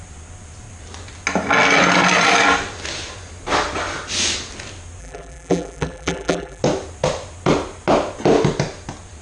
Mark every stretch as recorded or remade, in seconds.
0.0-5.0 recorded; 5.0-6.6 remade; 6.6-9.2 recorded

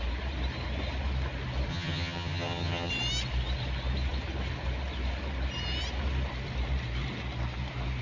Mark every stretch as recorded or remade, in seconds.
0.0-1.7 recorded; 1.7-2.9 remade; 2.9-8.0 recorded

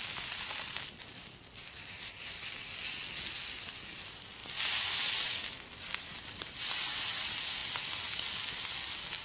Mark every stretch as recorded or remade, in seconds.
0.0-9.2 recorded

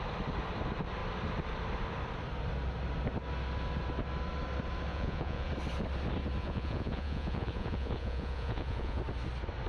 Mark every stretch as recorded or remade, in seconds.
0.0-4.9 recorded; 4.9-5.5 remade; 5.5-6.4 recorded; 6.4-9.0 remade; 9.0-9.7 recorded

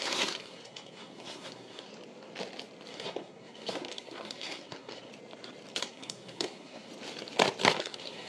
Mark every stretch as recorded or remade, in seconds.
0.0-1.9 remade; 1.9-2.9 recorded; 2.9-5.1 remade; 5.1-5.8 recorded; 5.8-6.9 remade; 6.9-7.8 recorded; 7.8-8.3 remade

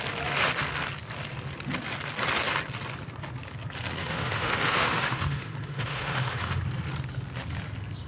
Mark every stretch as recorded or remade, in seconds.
0.0-4.0 recorded; 4.0-6.6 remade; 6.6-8.1 recorded